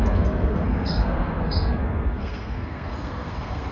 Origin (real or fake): fake